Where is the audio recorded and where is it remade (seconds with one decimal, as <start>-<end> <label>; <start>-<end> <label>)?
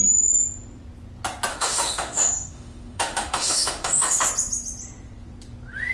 0.0-1.5 recorded; 1.5-4.3 remade; 4.3-5.9 recorded